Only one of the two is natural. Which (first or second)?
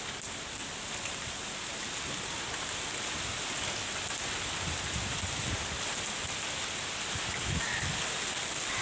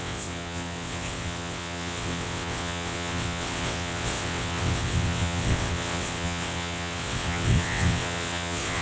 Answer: first